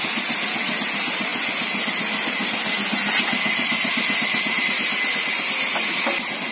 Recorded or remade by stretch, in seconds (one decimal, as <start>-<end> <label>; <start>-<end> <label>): 0.0-6.5 recorded